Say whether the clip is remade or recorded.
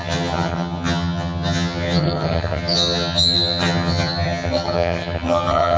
remade